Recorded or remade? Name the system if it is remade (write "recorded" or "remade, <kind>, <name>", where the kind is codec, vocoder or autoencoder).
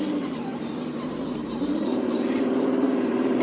remade, vocoder, BigVGAN v2